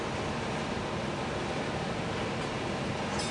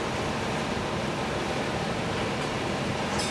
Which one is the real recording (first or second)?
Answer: first